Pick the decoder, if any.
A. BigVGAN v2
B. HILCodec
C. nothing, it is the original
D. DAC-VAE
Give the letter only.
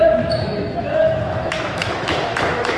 D